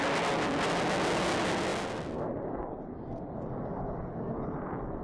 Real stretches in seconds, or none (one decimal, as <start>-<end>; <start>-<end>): 0.0-5.0